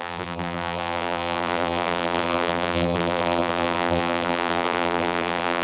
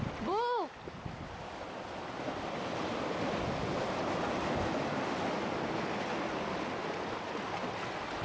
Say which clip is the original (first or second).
second